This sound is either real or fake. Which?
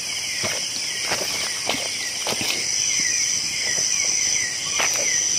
real